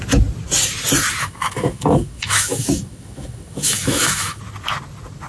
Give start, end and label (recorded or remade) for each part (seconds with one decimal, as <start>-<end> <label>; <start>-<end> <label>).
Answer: 0.0-1.2 recorded; 1.2-4.4 remade; 4.4-5.3 recorded